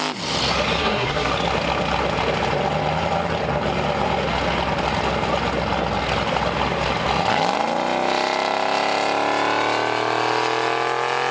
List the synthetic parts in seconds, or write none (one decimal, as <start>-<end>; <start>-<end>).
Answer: 0.8-1.3